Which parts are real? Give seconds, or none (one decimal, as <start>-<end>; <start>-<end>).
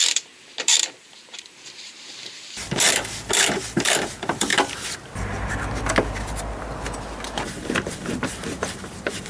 4.5-8.0